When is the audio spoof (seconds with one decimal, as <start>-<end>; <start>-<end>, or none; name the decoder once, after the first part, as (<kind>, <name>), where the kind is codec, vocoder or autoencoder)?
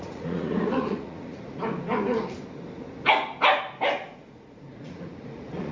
0.0-1.6 (vocoder, Vocos); 4.0-5.7